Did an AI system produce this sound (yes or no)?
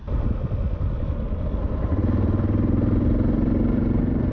no